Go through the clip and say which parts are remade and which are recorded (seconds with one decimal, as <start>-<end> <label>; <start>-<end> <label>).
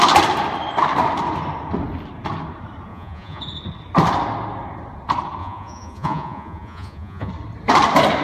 0.0-2.9 recorded; 2.9-3.4 remade; 3.4-5.4 recorded; 5.4-7.3 remade; 7.3-8.2 recorded